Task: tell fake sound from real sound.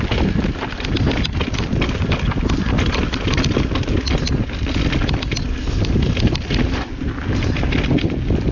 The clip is real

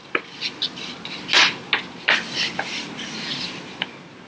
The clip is real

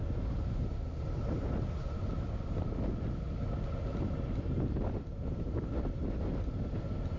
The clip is real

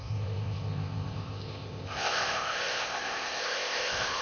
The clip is fake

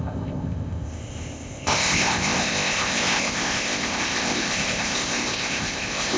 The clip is fake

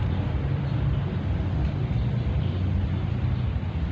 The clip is real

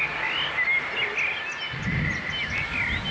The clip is real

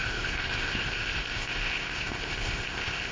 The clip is fake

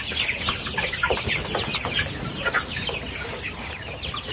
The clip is real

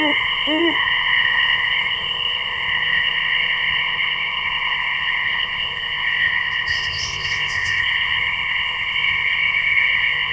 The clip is fake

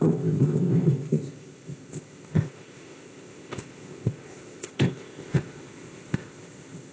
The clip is fake